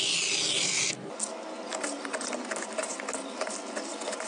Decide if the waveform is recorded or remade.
recorded